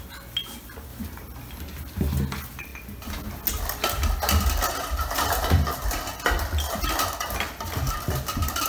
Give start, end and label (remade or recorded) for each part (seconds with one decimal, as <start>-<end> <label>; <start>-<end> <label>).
0.0-8.7 recorded